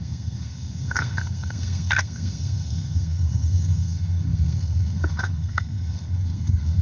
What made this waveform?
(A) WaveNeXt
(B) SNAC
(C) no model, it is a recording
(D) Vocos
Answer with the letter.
B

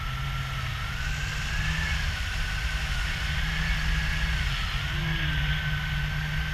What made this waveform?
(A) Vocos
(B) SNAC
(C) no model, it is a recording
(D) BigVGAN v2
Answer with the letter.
C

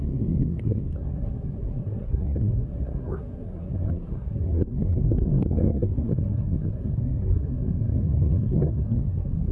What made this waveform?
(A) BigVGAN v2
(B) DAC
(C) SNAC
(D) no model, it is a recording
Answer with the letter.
C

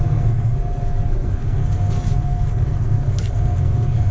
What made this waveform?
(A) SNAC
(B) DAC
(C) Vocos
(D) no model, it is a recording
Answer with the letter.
A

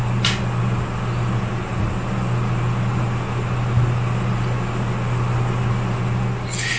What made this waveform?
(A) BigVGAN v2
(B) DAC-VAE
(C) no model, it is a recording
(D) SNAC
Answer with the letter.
C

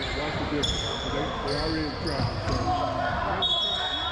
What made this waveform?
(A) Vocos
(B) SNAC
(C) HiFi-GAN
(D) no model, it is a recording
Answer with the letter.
D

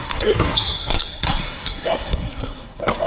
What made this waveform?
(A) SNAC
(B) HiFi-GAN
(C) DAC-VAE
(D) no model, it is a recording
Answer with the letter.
A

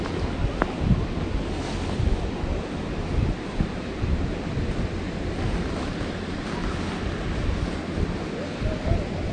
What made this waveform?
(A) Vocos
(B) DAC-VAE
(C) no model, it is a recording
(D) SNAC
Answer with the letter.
C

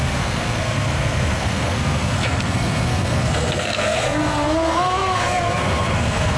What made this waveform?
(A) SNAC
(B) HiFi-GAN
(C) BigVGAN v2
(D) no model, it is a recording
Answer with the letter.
A